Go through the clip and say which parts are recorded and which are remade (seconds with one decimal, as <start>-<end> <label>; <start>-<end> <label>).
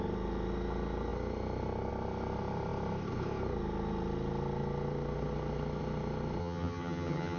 0.0-6.4 recorded; 6.4-7.4 remade